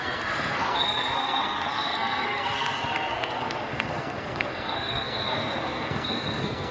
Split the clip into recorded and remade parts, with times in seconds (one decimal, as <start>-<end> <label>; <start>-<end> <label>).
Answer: 0.0-6.7 remade